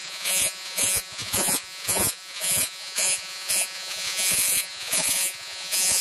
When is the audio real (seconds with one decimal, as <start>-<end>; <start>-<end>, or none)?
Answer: none

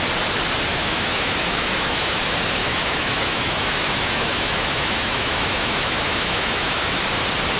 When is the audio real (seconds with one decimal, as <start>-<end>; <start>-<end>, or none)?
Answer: 0.0-0.7; 2.2-2.6; 7.0-7.6

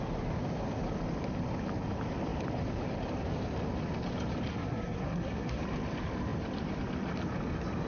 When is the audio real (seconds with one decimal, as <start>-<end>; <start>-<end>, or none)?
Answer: 0.0-4.5; 5.6-7.9

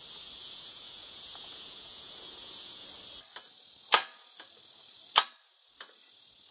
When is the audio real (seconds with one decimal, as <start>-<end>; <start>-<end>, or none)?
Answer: 0.0-0.4; 2.9-6.5